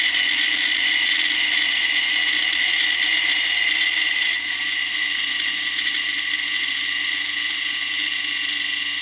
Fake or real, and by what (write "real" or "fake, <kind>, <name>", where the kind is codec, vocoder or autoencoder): real